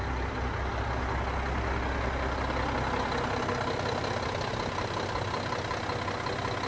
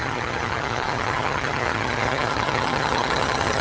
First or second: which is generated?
second